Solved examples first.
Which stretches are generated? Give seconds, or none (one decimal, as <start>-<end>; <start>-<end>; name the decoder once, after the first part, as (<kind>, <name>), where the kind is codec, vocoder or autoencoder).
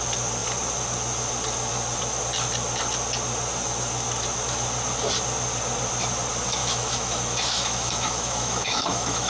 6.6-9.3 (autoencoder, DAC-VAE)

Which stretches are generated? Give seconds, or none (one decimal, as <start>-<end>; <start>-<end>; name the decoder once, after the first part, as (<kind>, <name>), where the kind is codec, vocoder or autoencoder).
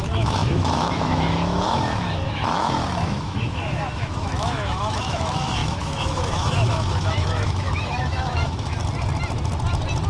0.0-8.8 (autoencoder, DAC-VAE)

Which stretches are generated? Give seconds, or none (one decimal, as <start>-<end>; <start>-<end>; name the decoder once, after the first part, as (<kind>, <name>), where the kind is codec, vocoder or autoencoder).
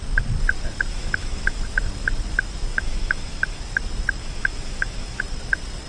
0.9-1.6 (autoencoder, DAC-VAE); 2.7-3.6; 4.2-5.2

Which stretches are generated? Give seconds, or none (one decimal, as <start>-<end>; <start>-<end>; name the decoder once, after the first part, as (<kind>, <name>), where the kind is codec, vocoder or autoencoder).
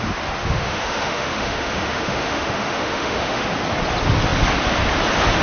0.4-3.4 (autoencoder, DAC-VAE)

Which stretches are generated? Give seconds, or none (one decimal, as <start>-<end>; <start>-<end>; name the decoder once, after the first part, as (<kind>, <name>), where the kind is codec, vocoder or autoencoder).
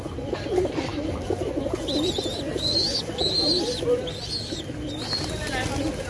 none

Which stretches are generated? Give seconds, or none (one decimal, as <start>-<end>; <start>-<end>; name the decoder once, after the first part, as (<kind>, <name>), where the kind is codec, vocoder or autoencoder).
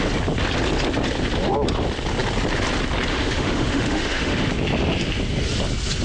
3.1-4.5 (autoencoder, DAC-VAE)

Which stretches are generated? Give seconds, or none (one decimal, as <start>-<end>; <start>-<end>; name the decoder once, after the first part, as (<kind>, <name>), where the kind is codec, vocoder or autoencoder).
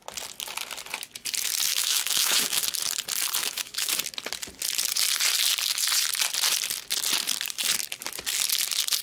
1.7-2.6 (autoencoder, DAC-VAE); 3.4-3.9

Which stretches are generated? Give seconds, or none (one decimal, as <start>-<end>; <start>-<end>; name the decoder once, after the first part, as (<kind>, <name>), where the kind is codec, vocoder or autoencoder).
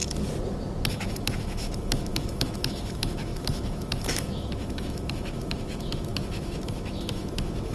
0.9-7.7 (autoencoder, DAC-VAE)